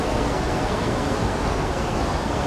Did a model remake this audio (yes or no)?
yes